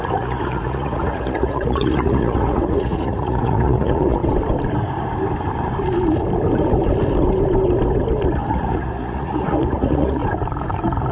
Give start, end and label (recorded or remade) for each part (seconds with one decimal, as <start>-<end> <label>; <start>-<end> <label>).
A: 0.0-4.2 remade; 4.2-8.5 recorded; 8.5-10.2 remade; 10.2-11.1 recorded